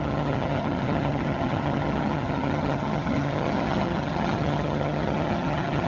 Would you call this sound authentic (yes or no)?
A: no